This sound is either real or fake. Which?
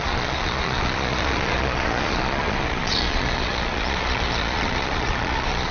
fake